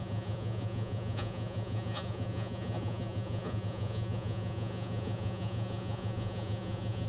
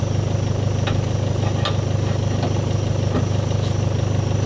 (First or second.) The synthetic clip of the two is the first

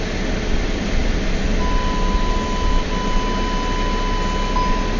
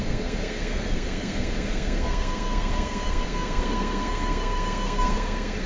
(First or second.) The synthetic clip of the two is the second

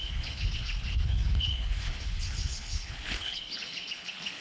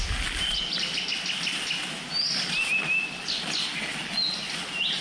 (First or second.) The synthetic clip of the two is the first